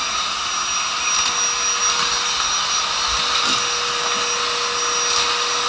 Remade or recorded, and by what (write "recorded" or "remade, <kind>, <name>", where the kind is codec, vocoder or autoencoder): recorded